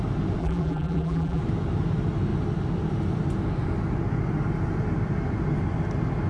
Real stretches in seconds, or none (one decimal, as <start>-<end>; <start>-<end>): 0.0-0.4; 1.4-6.3